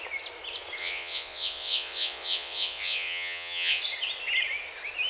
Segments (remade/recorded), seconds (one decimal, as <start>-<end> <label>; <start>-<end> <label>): 0.0-0.8 recorded; 0.8-3.8 remade; 3.8-5.1 recorded